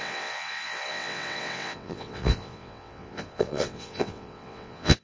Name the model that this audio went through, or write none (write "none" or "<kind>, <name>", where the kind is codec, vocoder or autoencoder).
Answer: vocoder, WaveNeXt